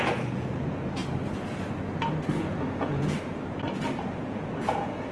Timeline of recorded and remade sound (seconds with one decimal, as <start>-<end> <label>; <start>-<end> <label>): 0.0-1.0 remade; 1.0-2.4 recorded; 2.4-3.3 remade; 3.3-4.0 recorded; 4.0-5.1 remade